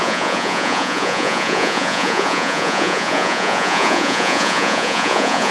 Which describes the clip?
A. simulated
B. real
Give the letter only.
A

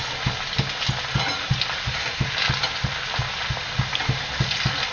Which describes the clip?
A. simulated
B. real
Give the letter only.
B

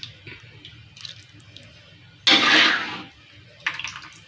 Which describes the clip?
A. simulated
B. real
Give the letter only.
B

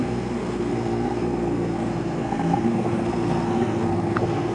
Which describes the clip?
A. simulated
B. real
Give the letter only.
A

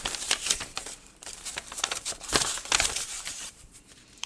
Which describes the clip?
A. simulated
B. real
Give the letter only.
A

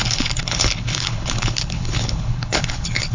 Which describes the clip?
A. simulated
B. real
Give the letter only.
A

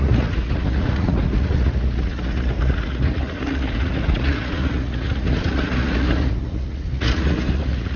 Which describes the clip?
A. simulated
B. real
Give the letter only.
A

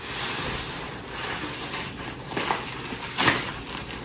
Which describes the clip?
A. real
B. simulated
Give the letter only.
A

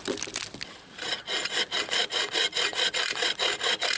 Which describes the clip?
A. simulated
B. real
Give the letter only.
B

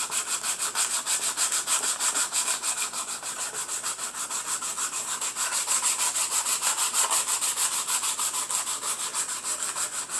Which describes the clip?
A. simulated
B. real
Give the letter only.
B